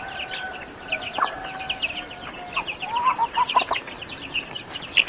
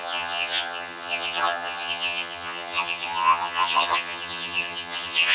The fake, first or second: second